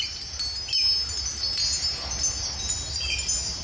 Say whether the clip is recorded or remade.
recorded